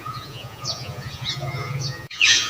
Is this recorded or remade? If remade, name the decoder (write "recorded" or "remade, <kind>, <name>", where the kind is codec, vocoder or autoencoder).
remade, vocoder, Vocos